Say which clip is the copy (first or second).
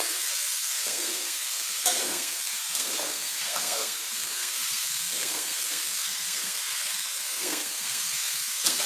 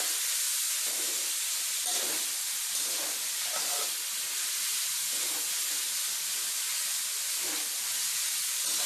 first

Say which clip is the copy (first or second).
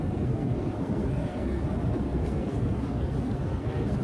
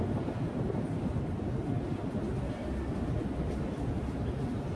first